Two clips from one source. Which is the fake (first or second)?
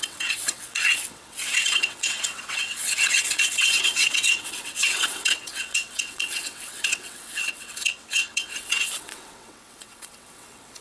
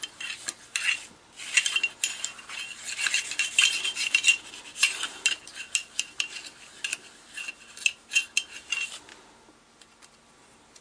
first